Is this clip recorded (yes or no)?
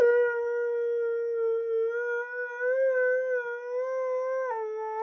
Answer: yes